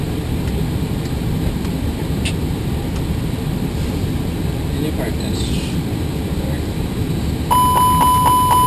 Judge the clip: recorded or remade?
recorded